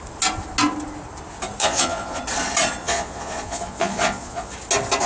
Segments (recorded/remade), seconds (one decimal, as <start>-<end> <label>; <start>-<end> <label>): 0.0-1.6 recorded; 1.6-2.2 remade; 2.2-2.8 recorded; 2.8-4.5 remade; 4.5-5.1 recorded

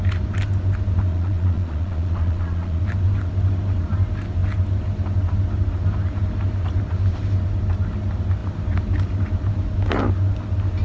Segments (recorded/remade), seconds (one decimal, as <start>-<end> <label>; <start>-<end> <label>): 0.0-1.1 recorded; 1.1-2.8 remade; 2.8-10.8 recorded

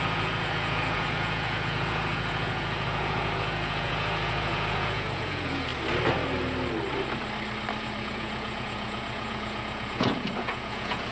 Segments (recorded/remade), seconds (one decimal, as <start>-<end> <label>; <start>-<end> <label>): 0.0-5.7 remade; 5.7-7.8 recorded; 7.8-11.1 remade

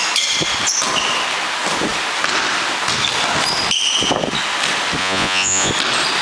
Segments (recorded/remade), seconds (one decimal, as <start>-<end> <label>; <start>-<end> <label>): 0.0-5.0 recorded; 5.0-5.7 remade; 5.7-6.2 recorded

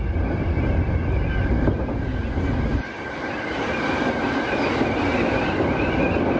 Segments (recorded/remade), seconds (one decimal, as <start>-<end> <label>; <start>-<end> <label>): 0.0-6.4 recorded

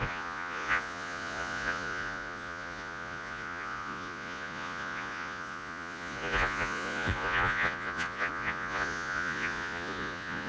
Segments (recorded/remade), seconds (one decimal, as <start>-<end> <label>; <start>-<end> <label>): 0.0-10.5 remade

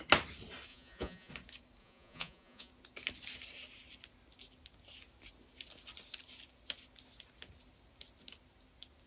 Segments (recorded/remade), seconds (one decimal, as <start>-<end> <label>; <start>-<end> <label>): 0.0-0.7 recorded; 0.7-1.3 remade; 1.3-1.8 recorded; 1.8-2.7 remade; 2.7-9.1 recorded